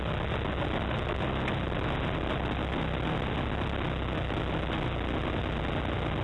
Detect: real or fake real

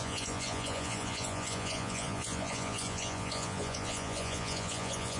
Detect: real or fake fake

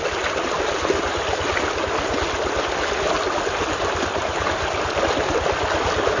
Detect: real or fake real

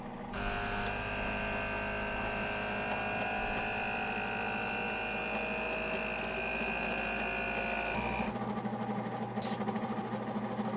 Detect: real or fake real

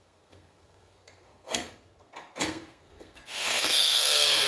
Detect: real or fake fake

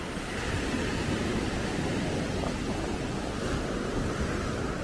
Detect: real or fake real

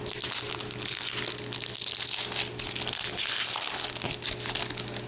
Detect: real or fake real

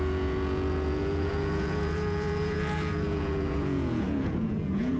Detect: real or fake fake